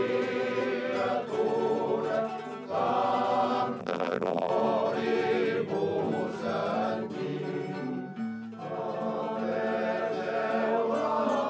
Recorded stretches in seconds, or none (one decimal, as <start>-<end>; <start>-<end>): 0.0-3.8; 4.5-11.5